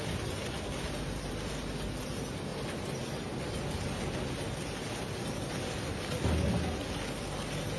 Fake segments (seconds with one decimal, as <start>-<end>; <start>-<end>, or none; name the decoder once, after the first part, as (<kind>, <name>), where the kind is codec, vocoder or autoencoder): none